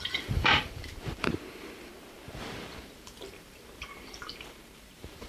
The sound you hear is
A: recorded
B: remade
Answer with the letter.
B